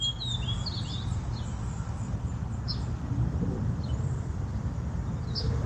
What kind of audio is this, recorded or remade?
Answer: recorded